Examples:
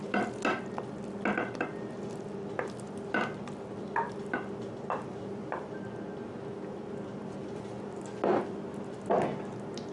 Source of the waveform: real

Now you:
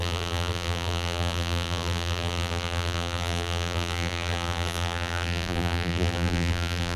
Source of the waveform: fake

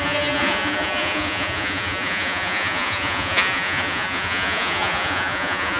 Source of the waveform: fake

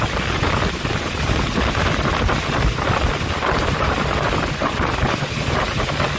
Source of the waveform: fake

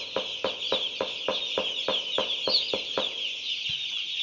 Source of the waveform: real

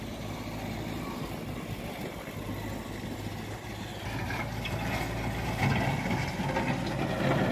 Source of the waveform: real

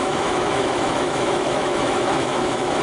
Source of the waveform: fake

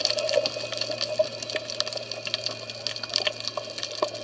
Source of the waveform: real